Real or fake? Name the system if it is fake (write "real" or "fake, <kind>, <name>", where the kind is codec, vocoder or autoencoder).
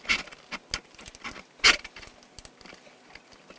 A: real